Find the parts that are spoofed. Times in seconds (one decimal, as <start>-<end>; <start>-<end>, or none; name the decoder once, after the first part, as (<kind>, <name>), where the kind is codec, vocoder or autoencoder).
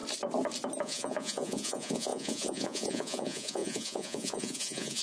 0.8-5.0 (vocoder, Vocos)